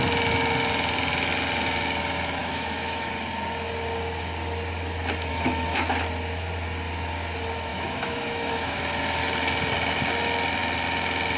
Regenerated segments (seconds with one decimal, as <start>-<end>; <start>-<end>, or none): 2.4-3.1; 5.3-5.8; 7.7-8.8